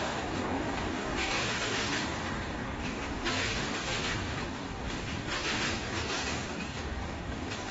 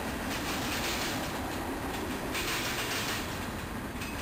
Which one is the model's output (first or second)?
first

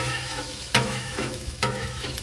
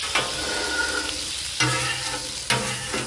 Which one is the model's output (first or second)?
first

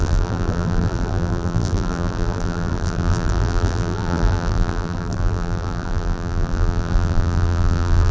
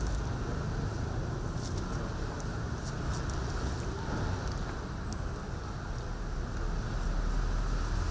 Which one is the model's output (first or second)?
first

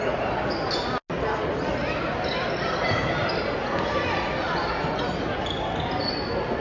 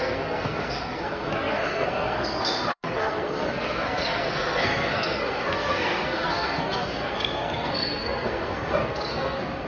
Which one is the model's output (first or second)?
second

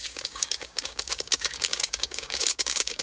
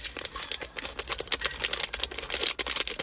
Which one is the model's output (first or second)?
first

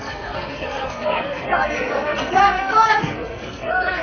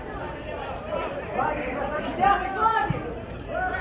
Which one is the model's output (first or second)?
first